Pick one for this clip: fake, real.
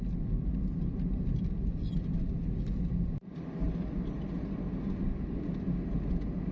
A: real